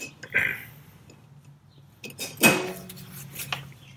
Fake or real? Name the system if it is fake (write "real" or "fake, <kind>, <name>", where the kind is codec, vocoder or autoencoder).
real